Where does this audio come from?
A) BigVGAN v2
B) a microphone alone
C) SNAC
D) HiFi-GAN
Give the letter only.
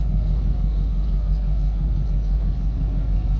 C